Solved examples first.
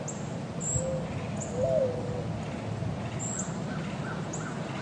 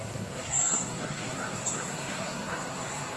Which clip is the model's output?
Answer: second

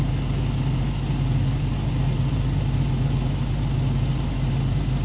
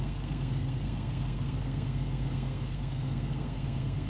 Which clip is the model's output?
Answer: second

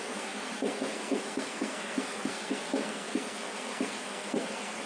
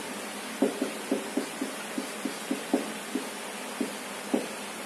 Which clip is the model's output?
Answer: first